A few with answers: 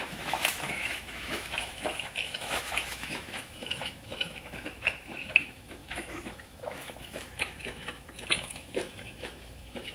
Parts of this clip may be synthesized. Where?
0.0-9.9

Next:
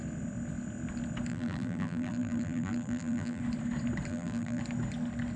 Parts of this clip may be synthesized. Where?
1.3-3.4; 4.1-4.6

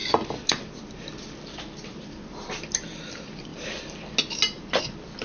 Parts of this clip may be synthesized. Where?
none

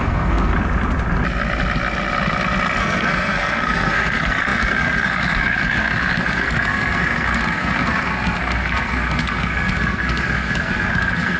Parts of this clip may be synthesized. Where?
0.0-0.5; 2.8-11.4